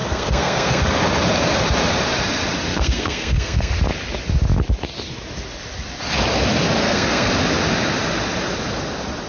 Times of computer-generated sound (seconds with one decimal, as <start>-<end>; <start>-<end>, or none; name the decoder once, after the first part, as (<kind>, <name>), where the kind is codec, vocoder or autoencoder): 0.0-0.8 (codec, SNAC); 2.7-3.7; 6.8-7.3